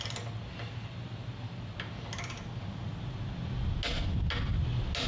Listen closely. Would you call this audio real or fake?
real